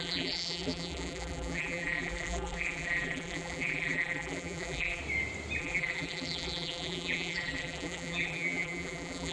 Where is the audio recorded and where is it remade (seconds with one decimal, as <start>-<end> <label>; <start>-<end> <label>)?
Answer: 0.0-5.0 remade; 5.0-5.6 recorded; 5.6-9.3 remade